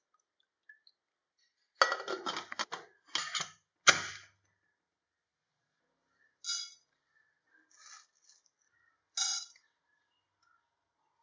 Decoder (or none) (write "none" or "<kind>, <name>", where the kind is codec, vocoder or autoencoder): none